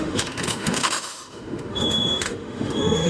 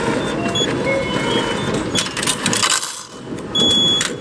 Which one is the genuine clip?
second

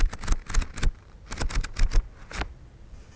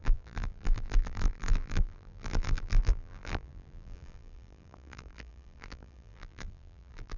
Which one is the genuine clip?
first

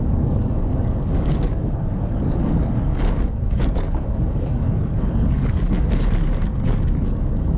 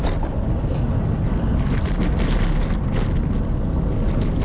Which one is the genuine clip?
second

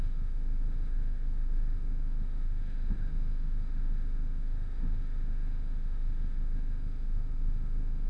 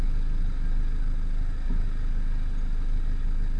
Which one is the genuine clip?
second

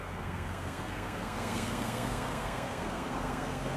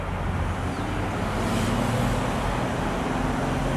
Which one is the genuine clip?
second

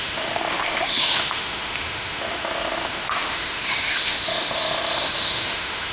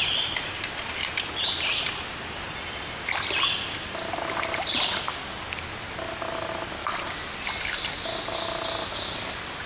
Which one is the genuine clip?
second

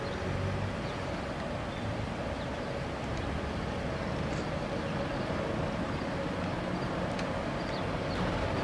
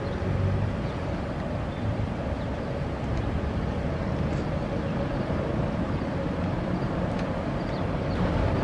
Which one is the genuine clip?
first